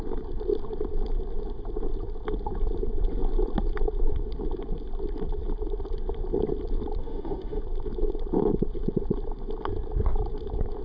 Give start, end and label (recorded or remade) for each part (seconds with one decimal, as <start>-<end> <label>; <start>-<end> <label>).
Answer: 0.0-7.0 recorded; 7.0-7.6 remade; 7.6-10.8 recorded